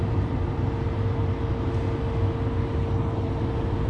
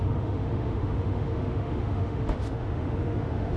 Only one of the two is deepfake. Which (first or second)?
second